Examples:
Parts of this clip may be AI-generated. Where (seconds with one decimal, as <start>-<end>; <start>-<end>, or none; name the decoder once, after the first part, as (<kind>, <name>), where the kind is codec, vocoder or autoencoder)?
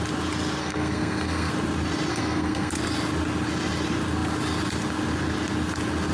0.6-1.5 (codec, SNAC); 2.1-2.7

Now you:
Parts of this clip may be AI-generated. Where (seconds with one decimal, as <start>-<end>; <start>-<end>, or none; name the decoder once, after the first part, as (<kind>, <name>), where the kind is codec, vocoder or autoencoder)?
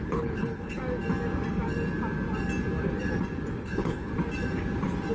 0.0-0.8 (codec, HILCodec); 3.6-4.1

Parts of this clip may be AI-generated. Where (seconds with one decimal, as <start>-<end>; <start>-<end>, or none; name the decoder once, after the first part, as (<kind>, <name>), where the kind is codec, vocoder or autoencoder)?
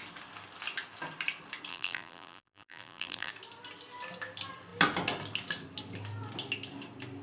1.7-3.3 (vocoder, BigVGAN v2)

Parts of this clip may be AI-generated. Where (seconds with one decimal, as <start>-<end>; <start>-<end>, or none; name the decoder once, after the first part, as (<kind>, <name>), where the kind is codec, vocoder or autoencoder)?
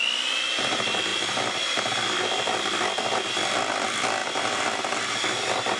4.2-4.8 (vocoder, BigVGAN v2)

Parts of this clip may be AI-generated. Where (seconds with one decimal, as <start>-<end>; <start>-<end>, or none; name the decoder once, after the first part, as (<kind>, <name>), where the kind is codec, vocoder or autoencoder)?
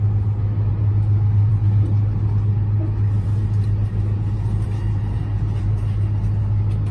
none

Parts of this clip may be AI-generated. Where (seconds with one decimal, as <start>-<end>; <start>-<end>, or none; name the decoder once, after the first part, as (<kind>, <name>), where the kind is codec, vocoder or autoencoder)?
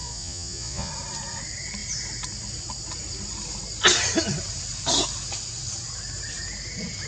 0.0-0.9 (vocoder, Vocos)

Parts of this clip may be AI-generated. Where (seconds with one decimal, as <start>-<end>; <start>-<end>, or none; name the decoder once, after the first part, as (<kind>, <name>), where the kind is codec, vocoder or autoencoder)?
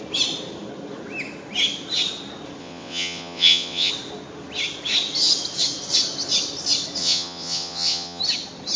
2.6-3.9 (vocoder, WaveNeXt); 7.0-8.2